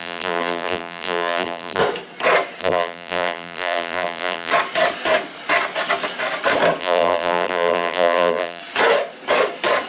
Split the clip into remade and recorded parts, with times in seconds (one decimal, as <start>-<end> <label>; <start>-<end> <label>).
0.0-1.8 remade; 1.8-2.6 recorded; 2.6-4.5 remade; 4.5-6.8 recorded; 6.8-8.6 remade; 8.6-9.9 recorded